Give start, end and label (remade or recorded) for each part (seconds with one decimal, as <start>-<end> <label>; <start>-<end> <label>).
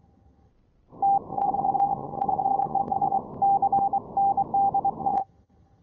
0.0-0.5 remade; 0.5-1.3 recorded; 1.3-3.2 remade; 3.2-5.0 recorded; 5.0-5.8 remade